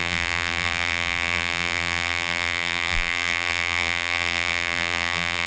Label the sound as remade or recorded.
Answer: remade